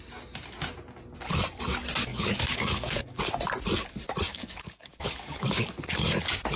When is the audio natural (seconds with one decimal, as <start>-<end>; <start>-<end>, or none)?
0.0-2.1; 3.2-4.3; 6.1-6.6